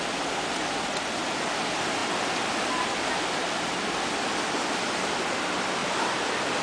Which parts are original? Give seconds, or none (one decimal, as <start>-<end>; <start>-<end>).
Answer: 0.0-6.6